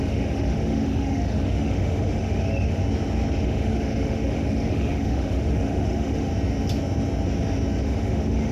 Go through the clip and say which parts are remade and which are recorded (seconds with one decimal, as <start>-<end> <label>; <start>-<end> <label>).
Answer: 0.0-2.8 remade; 2.8-3.4 recorded; 3.4-6.3 remade; 6.3-7.8 recorded; 7.8-8.5 remade

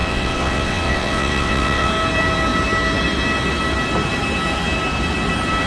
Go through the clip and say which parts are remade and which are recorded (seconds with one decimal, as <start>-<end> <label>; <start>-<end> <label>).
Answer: 0.0-1.9 remade; 1.9-5.7 recorded

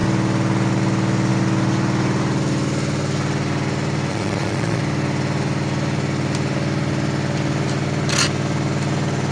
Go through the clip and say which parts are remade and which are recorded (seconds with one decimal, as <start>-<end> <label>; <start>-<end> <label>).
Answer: 0.0-4.1 recorded; 4.1-4.8 remade; 4.8-9.3 recorded

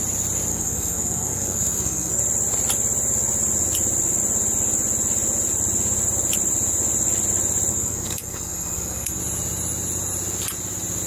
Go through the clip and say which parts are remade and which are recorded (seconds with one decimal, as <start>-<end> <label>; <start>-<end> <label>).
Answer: 0.0-0.5 recorded; 0.5-2.2 remade; 2.2-7.7 recorded; 7.7-9.2 remade; 9.2-11.1 recorded